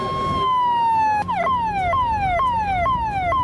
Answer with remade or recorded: recorded